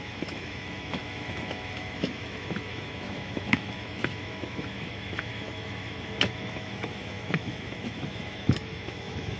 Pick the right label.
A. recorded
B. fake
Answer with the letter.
B